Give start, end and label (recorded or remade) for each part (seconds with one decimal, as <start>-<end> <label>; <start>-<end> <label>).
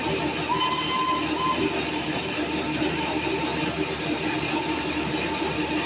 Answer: 0.0-5.9 recorded